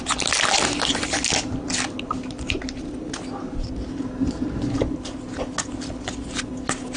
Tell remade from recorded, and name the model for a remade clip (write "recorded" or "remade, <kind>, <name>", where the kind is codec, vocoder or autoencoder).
recorded